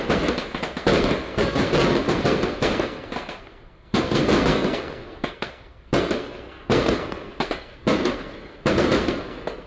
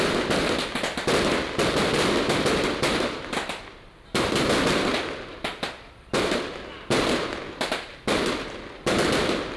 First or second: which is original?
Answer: second